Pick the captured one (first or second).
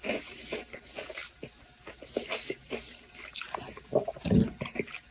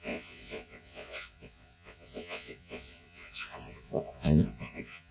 first